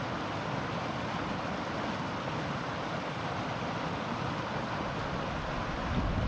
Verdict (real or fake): real